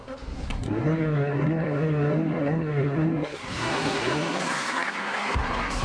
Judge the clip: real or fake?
fake